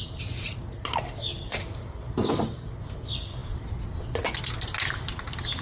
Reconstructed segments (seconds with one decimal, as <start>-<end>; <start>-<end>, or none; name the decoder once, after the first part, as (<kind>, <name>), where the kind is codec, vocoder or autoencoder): 1.3-2.3 (vocoder, BigVGAN v2)